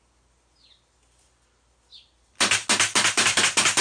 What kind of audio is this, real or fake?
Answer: real